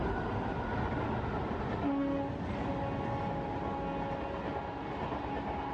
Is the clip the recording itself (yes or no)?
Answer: yes